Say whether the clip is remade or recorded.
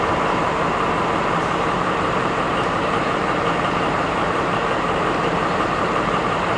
remade